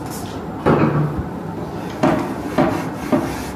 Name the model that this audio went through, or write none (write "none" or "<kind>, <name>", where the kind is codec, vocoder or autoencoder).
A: none